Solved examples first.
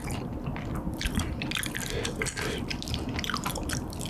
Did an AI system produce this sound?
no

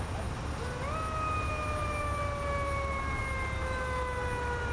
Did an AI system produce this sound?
no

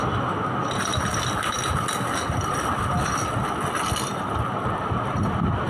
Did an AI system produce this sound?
no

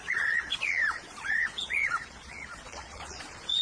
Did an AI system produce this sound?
yes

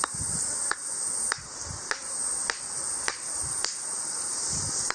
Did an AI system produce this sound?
no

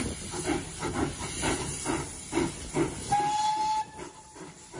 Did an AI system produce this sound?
no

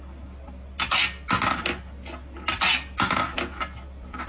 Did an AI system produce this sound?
no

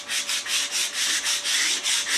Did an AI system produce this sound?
no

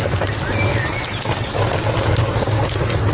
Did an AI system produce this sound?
no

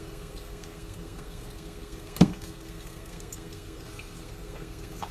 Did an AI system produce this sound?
yes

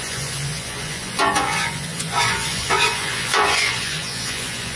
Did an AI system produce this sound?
yes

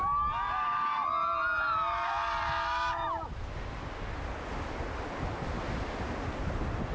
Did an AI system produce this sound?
no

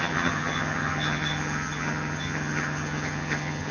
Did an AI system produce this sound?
yes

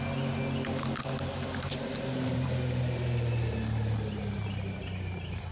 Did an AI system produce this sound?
no